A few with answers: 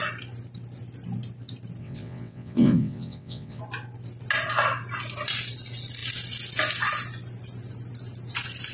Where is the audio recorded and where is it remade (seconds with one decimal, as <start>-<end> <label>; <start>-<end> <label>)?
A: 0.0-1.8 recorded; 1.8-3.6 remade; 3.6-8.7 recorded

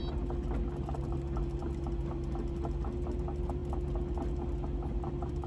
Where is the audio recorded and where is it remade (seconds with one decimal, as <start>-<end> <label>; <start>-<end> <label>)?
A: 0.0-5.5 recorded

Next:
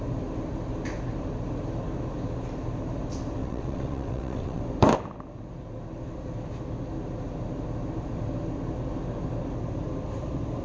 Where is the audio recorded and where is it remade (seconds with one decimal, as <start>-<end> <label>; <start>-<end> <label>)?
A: 0.0-3.4 recorded; 3.4-4.6 remade; 4.6-10.6 recorded

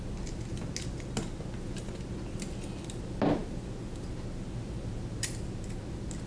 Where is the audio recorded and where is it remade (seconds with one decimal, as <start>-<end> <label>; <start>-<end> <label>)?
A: 0.0-6.3 recorded

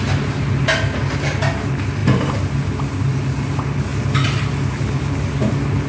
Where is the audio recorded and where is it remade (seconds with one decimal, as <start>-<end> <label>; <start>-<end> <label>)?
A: 0.0-5.9 recorded

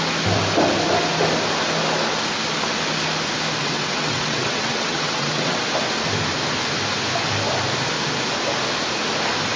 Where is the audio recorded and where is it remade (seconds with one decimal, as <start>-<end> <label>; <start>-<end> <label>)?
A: 0.0-3.6 recorded; 3.6-5.6 remade; 5.6-9.6 recorded